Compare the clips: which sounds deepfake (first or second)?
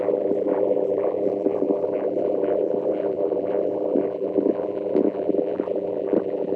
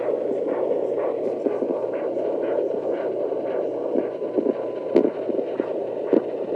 first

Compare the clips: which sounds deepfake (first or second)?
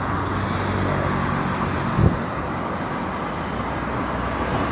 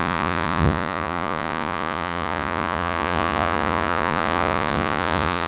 second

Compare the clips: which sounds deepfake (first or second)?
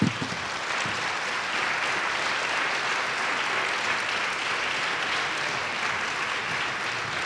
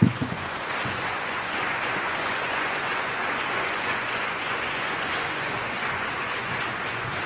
second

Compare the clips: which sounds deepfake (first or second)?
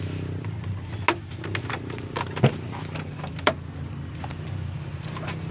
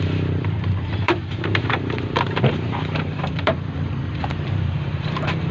second